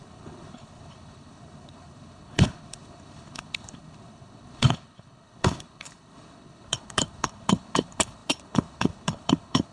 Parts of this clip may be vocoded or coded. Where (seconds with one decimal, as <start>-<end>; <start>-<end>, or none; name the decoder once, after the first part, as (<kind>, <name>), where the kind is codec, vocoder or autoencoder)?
0.0-9.7 (codec, HILCodec)